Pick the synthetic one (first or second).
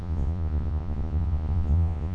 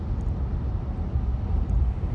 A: first